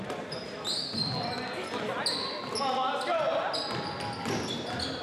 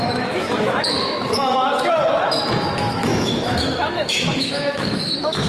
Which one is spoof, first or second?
second